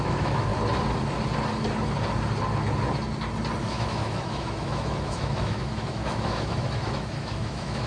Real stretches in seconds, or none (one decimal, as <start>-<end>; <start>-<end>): 0.5-3.6